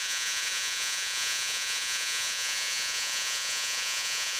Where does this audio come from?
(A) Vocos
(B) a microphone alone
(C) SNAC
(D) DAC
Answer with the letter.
A